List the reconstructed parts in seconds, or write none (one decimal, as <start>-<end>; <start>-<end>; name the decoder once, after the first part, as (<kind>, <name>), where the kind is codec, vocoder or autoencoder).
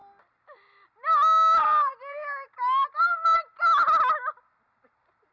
none